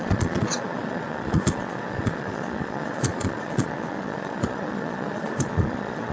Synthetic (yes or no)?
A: yes